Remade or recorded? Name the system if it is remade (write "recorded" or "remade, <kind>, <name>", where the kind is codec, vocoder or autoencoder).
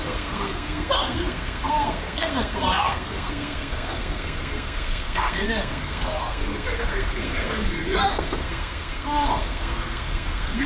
remade, codec, SNAC